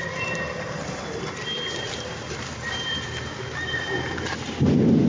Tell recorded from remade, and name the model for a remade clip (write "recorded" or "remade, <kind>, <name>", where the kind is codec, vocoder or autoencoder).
recorded